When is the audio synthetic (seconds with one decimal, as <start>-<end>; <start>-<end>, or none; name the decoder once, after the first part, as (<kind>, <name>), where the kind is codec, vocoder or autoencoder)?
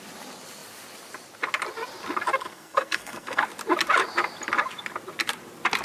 2.5-3.4 (codec, SNAC)